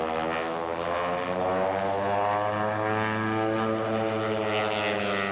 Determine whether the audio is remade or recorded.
recorded